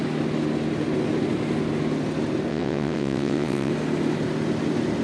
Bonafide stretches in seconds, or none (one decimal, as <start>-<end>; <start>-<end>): 0.0-2.5; 3.7-5.0